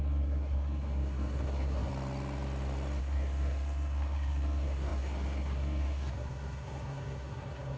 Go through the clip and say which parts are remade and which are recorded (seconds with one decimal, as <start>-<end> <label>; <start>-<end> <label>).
0.0-1.9 remade; 1.9-3.0 recorded; 3.0-7.8 remade